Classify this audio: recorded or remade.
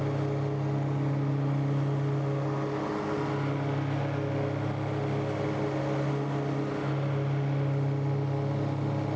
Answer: recorded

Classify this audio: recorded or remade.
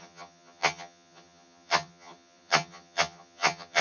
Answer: remade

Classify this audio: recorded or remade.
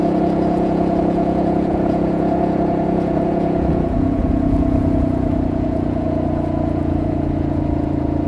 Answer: remade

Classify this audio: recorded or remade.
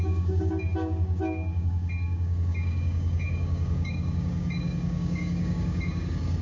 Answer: remade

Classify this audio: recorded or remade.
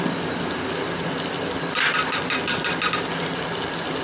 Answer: recorded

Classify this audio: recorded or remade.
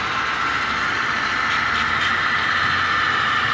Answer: recorded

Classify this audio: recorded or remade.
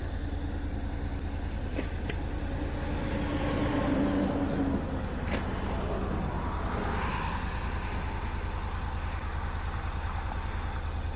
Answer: recorded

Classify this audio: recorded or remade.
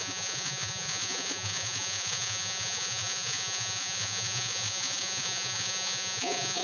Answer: remade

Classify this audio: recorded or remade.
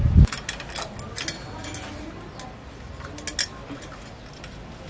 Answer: recorded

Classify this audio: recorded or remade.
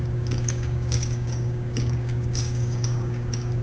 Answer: remade